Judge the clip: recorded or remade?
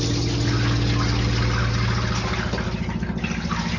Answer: recorded